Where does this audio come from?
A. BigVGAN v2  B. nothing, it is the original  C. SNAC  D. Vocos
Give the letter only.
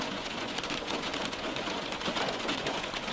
D